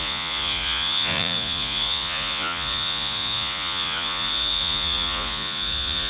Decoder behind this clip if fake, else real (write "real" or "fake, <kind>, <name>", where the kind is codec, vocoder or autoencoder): fake, vocoder, Vocos